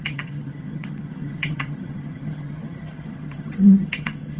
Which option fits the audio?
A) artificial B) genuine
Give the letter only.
A